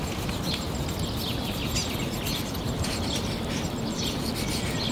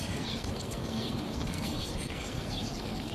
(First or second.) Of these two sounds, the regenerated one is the second